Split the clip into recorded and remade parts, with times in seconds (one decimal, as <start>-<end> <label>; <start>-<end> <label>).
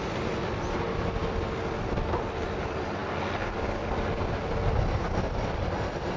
0.0-6.2 recorded